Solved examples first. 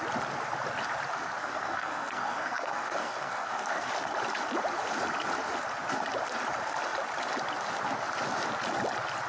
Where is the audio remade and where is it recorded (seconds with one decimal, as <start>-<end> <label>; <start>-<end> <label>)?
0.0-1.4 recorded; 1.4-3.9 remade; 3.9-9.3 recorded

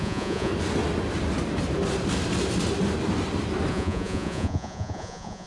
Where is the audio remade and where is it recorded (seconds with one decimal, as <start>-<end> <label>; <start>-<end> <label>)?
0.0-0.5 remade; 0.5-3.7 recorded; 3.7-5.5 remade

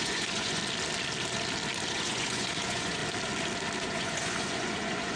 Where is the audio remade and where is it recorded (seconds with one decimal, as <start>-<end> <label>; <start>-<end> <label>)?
0.0-0.6 remade; 0.6-1.9 recorded; 1.9-3.0 remade; 3.0-3.8 recorded; 3.8-5.2 remade

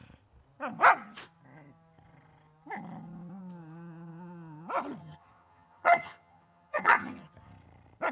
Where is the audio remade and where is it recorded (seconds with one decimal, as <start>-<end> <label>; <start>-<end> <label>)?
0.0-5.0 recorded; 5.0-7.3 remade; 7.3-8.1 recorded

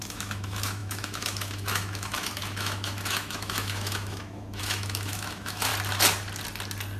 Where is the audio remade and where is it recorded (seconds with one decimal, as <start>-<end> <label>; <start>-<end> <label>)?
0.0-5.7 remade; 5.7-7.0 recorded

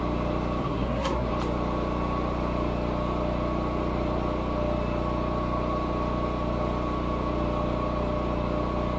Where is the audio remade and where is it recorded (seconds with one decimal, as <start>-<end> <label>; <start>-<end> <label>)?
0.0-0.6 recorded; 0.6-1.3 remade; 1.3-9.0 recorded